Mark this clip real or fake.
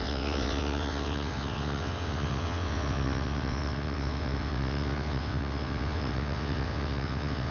fake